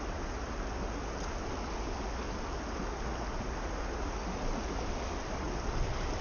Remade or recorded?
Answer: recorded